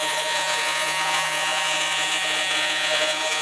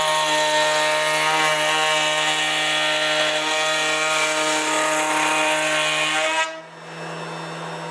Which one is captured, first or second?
second